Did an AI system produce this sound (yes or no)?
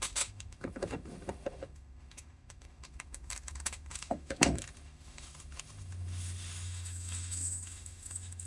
yes